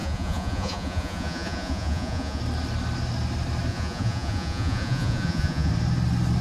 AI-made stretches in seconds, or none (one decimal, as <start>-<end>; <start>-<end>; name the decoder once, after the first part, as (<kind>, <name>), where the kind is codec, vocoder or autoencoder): 0.0-2.4 (vocoder, Vocos); 3.7-5.7